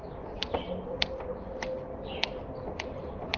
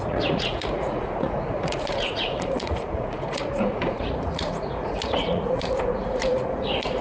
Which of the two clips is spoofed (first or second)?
second